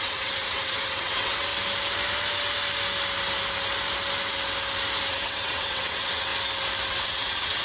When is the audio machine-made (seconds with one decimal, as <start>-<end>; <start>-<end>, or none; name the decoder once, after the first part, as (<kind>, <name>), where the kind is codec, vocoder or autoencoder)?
0.0-1.5 (vocoder, WaveNeXt); 5.1-6.3; 6.9-7.6